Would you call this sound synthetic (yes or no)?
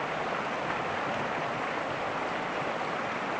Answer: no